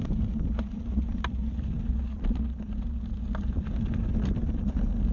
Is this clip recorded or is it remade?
recorded